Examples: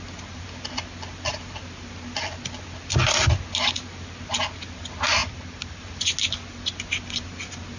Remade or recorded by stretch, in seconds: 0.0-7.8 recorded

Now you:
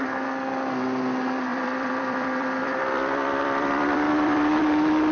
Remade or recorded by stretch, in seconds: 0.0-1.5 recorded; 1.5-4.6 remade; 4.6-5.1 recorded

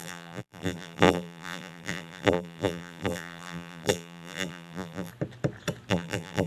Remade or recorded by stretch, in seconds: 0.0-5.1 remade; 5.1-5.9 recorded; 5.9-6.5 remade

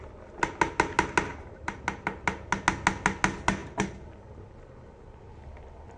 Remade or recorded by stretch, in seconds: 0.0-1.3 recorded; 1.3-1.8 remade; 1.8-6.0 recorded

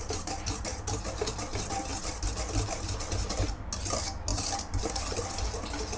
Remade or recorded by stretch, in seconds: 0.0-4.3 recorded; 4.3-4.9 remade; 4.9-6.0 recorded